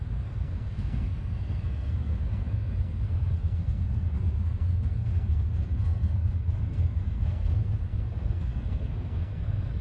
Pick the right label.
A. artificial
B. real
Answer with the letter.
A